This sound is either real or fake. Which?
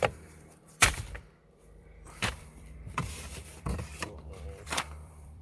fake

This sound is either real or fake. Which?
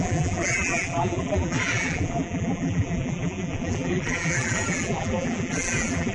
fake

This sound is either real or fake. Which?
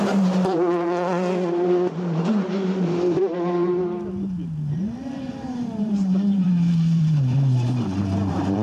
fake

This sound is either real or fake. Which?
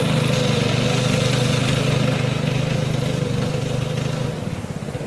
real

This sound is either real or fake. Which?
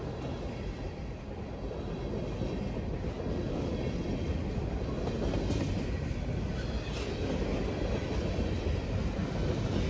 real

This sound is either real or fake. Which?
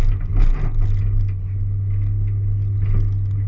real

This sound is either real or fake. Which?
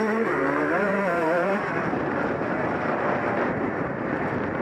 fake